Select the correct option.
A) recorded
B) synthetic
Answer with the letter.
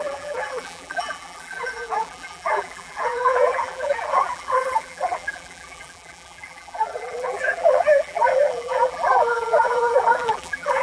B